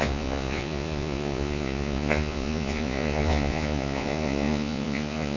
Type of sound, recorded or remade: remade